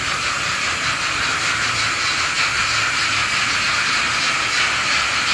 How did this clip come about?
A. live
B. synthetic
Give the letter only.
A